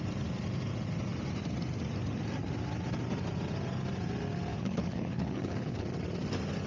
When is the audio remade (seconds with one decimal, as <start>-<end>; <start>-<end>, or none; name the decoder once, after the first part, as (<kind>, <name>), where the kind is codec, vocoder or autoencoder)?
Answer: 4.5-5.9 (codec, HILCodec)